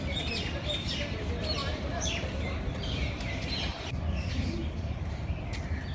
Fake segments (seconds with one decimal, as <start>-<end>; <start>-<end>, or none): 1.6-5.1